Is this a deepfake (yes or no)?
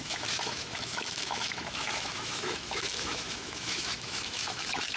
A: yes